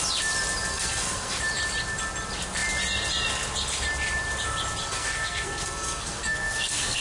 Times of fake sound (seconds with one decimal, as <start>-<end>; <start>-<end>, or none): 0.7-1.4; 4.8-7.0